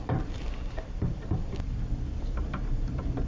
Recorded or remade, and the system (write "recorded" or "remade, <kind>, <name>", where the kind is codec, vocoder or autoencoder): remade, vocoder, BigVGAN v2